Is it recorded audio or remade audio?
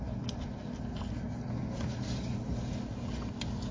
recorded